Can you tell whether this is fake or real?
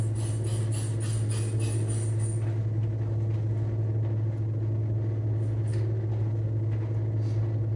real